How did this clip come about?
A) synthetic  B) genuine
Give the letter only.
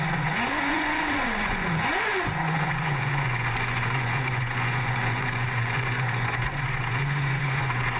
A